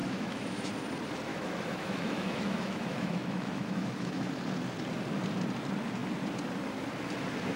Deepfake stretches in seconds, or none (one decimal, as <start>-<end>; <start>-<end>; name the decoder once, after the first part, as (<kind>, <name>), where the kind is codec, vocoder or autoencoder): 0.0-0.7 (autoencoder, DAC-VAE); 1.3-4.3